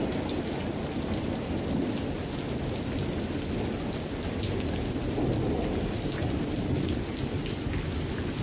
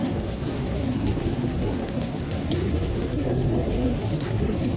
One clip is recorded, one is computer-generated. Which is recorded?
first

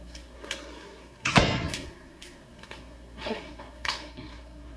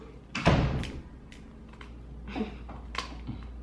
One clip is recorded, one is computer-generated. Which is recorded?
second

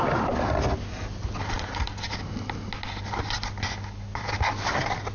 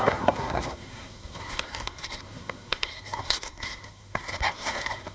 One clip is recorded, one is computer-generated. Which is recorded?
first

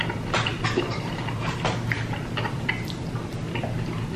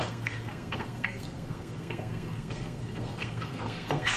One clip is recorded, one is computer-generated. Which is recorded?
first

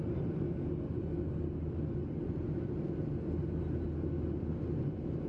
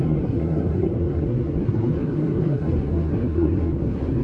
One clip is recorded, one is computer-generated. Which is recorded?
first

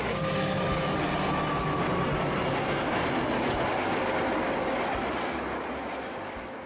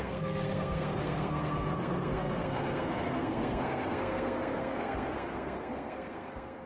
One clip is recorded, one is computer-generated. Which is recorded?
first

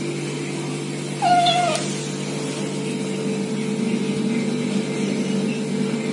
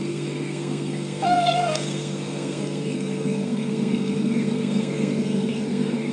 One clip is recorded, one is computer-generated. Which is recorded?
first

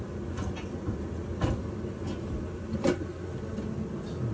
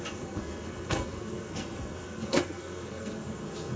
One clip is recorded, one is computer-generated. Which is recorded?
first